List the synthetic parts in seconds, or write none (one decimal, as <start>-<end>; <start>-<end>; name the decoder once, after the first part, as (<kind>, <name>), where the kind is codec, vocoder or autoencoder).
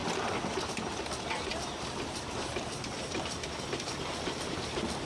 0.0-1.0 (vocoder, BigVGAN v2); 1.5-4.6